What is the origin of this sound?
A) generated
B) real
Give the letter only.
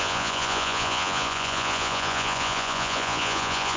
A